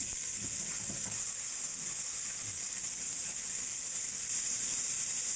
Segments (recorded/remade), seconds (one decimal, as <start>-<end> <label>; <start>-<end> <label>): 0.0-1.7 recorded; 1.7-4.1 remade; 4.1-5.4 recorded

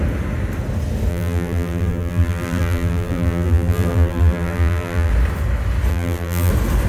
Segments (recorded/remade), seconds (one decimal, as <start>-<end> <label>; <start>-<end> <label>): 0.0-1.1 recorded; 1.1-5.1 remade; 5.1-5.9 recorded; 5.9-6.5 remade; 6.5-6.9 recorded

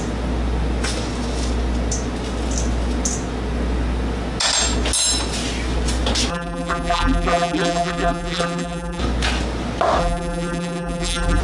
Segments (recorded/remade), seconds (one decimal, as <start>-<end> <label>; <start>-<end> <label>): 0.0-6.3 recorded; 6.3-9.0 remade; 9.0-10.0 recorded; 10.0-11.4 remade

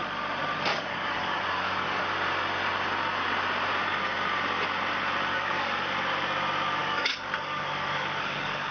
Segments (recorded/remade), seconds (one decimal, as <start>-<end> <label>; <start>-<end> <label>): 0.0-0.7 recorded; 0.7-2.0 remade; 2.0-5.3 recorded; 5.3-5.9 remade; 5.9-6.8 recorded; 6.8-8.7 remade